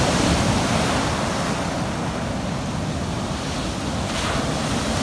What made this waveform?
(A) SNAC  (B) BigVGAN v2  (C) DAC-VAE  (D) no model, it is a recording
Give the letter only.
D